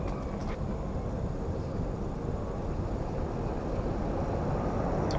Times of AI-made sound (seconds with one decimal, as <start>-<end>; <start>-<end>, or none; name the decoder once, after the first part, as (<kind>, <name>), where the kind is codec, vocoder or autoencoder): none